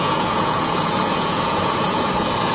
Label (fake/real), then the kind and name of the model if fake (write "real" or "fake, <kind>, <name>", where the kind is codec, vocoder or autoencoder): fake, vocoder, Vocos